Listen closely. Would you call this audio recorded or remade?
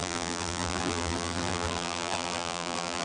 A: remade